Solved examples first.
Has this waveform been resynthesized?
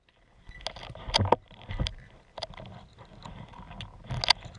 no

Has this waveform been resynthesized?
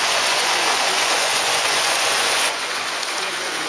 yes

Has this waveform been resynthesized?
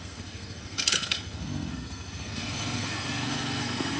yes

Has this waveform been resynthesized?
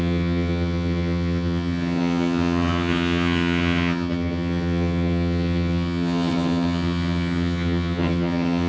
yes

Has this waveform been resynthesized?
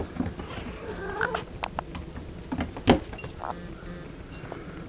no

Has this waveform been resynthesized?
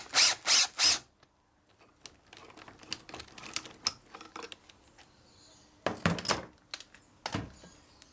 no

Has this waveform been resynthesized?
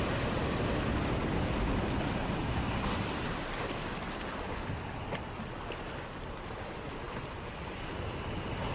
no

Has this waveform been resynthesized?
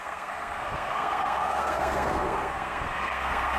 yes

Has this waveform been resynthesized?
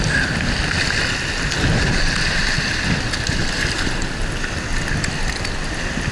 no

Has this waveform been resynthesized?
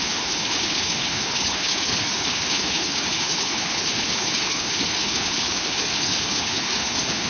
yes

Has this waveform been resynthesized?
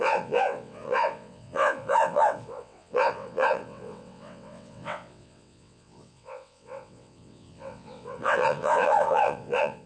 yes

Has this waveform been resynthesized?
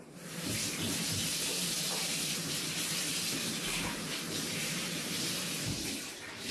yes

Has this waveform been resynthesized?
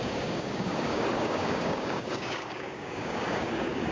yes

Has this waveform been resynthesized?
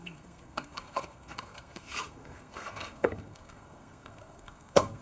yes